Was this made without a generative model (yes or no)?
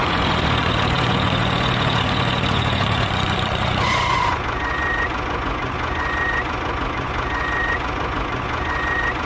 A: no